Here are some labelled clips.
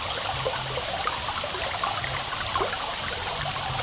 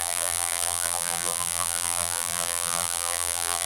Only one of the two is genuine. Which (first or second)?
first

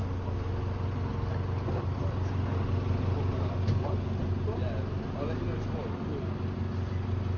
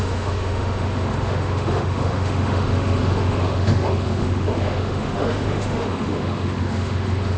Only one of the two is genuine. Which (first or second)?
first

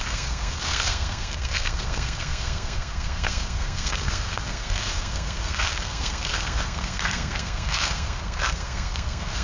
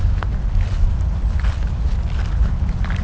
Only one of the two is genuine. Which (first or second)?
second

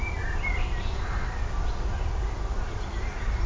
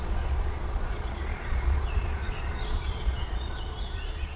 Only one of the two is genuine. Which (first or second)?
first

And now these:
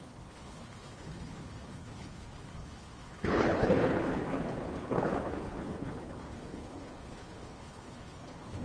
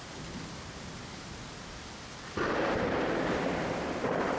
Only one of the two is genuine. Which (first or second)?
second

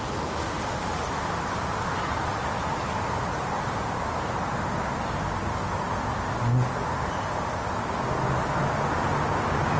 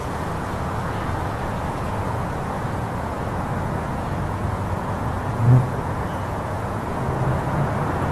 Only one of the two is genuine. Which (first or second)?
first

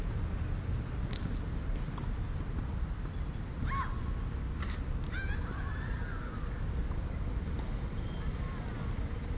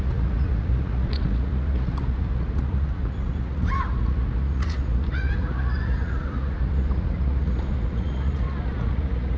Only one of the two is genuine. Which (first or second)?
first